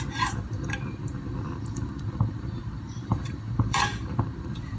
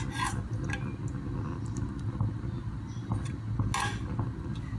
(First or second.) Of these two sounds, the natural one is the second